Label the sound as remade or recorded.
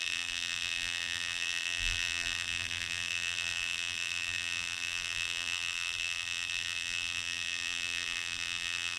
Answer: remade